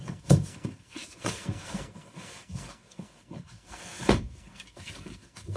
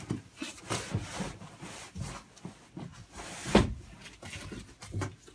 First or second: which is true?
second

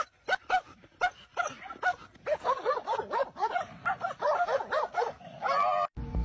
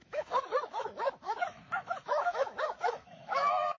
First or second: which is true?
first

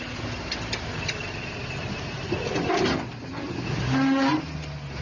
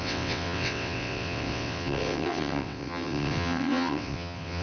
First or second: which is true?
first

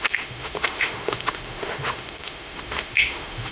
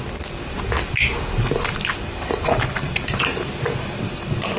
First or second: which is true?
second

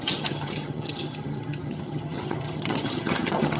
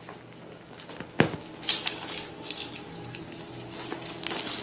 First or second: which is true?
second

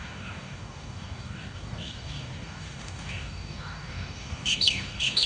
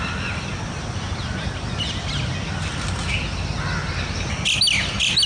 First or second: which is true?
second